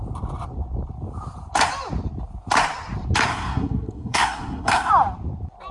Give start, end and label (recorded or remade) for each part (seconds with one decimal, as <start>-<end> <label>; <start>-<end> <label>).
0.0-3.3 recorded; 3.3-4.9 remade; 4.9-5.7 recorded